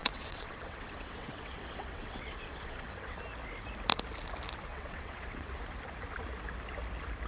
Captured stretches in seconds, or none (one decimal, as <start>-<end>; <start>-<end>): 3.2-4.7; 5.6-7.3